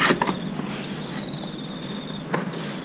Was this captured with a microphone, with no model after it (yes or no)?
yes